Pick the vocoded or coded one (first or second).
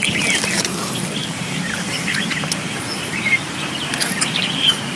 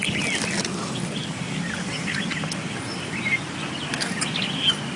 first